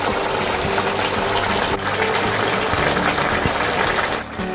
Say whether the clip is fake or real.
real